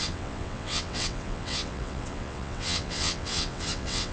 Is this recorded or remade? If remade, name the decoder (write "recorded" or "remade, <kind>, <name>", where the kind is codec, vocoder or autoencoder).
remade, vocoder, WaveNeXt